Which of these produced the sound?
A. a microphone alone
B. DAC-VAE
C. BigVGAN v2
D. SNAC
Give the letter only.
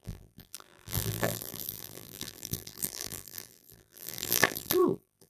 C